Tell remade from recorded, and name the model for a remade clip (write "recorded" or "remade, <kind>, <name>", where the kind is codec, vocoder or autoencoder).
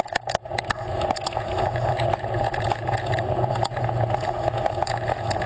remade, vocoder, Vocos